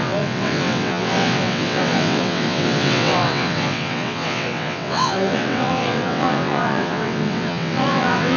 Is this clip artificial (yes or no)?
yes